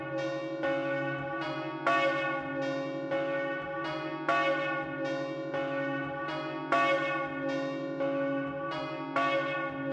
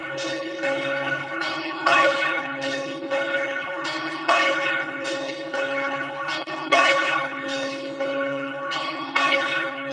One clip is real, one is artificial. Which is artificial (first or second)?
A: second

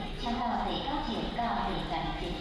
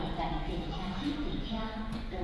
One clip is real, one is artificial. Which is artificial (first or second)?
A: second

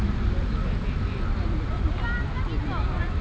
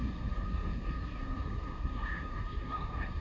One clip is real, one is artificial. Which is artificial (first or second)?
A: second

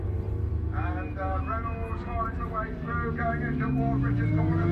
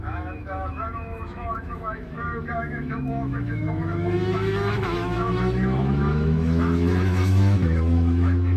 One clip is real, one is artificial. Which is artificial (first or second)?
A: second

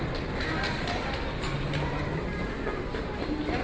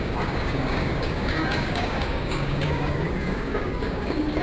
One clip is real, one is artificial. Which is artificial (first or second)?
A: second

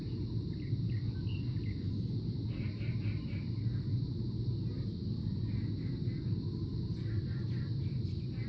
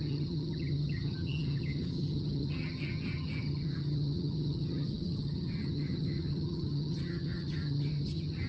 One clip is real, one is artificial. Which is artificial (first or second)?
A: second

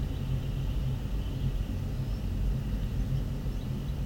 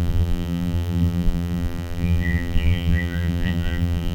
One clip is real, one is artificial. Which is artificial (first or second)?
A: second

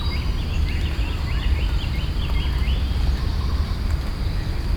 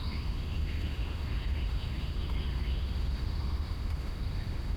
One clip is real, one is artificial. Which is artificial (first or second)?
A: second